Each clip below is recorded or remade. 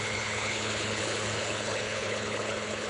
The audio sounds remade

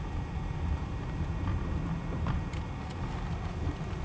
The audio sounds recorded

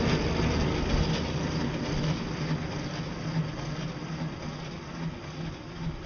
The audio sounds recorded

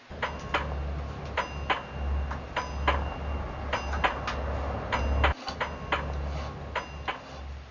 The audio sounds recorded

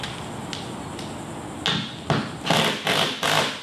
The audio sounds recorded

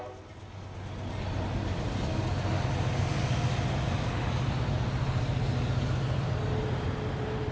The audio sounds recorded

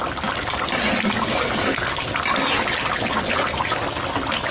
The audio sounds recorded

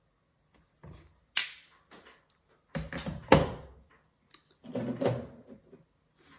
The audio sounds recorded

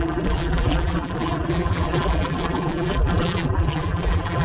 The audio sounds remade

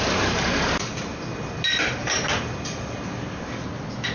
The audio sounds recorded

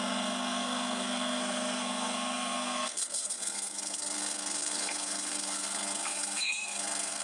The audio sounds remade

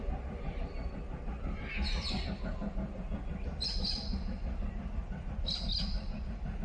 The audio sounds recorded